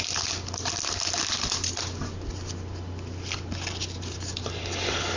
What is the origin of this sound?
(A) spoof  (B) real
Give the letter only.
B